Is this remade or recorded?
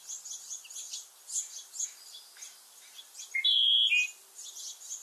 recorded